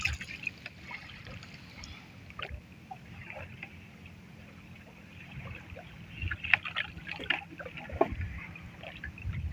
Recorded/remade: recorded